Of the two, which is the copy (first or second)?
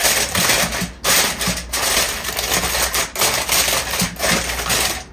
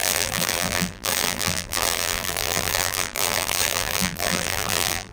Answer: second